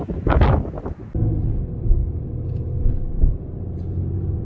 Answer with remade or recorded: recorded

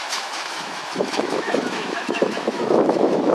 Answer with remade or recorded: remade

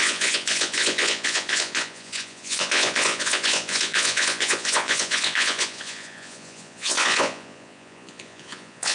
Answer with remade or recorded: remade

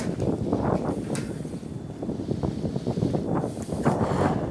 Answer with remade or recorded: recorded